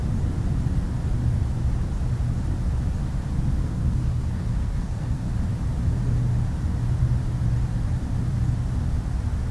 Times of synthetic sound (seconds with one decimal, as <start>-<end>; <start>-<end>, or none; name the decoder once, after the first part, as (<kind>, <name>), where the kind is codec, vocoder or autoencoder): 3.6-5.3 (codec, SNAC)